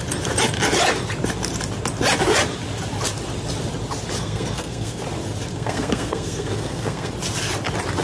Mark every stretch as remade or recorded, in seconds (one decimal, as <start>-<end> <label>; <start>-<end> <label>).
0.0-4.2 recorded; 4.2-5.0 remade; 5.0-5.5 recorded; 5.5-7.1 remade; 7.1-8.0 recorded